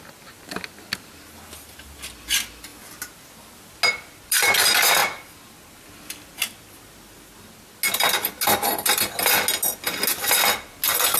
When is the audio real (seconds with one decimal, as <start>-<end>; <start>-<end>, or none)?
0.0-11.2